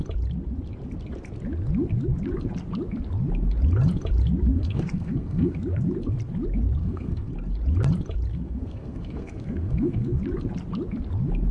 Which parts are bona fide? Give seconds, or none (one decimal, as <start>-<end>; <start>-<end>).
0.0-4.5; 5.6-6.8; 7.3-8.3; 10.2-11.5